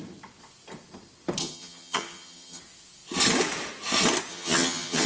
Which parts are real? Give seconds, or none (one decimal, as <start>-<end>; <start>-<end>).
0.0-1.4; 2.6-4.3